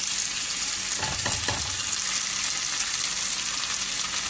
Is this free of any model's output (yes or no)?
yes